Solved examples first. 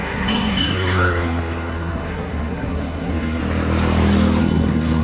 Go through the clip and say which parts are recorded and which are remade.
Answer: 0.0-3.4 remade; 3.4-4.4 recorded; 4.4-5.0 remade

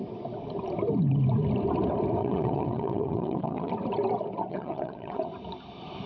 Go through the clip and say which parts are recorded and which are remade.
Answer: 0.0-2.2 recorded; 2.2-3.7 remade; 3.7-4.5 recorded; 4.5-5.3 remade; 5.3-6.1 recorded